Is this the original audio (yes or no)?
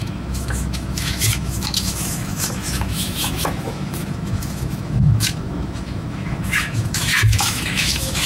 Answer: no